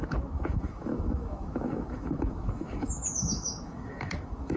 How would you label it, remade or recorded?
remade